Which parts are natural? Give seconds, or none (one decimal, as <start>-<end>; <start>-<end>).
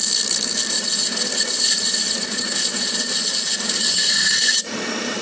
0.0-0.7